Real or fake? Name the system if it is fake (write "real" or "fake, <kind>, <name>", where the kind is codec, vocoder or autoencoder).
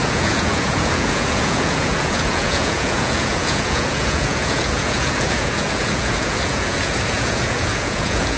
fake, vocoder, Vocos